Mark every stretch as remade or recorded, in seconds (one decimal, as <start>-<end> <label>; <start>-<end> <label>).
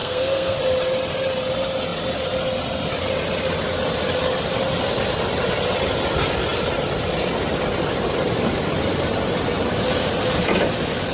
0.0-0.6 remade; 0.6-11.1 recorded